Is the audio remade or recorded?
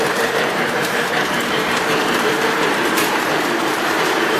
remade